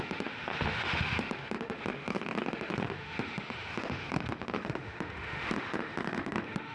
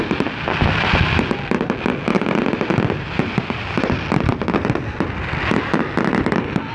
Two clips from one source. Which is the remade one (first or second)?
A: first